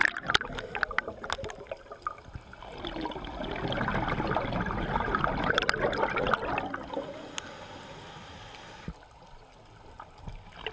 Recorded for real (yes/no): yes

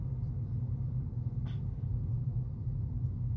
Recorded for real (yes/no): yes